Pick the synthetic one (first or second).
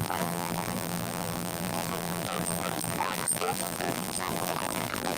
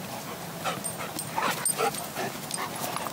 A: first